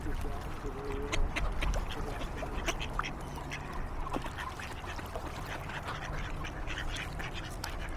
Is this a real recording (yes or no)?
no